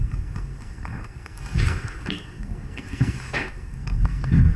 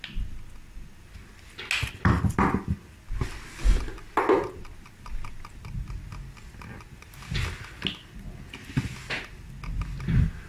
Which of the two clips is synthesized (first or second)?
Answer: first